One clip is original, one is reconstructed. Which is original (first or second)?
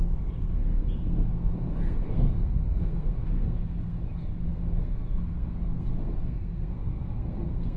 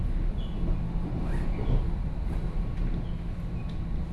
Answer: second